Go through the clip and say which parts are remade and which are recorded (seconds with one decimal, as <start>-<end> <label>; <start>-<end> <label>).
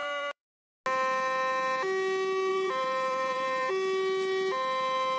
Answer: 0.0-0.7 remade; 0.7-2.5 recorded; 2.5-3.7 remade; 3.7-5.2 recorded